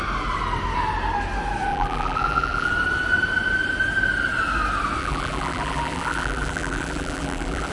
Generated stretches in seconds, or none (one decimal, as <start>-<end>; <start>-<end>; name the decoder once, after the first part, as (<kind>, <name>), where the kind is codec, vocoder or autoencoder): 1.7-2.7 (vocoder, BigVGAN v2); 5.0-7.7